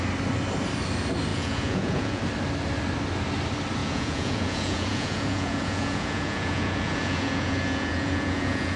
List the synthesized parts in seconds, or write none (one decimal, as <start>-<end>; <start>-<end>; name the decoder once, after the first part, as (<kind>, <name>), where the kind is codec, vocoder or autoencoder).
1.3-2.2 (vocoder, Vocos); 3.8-8.8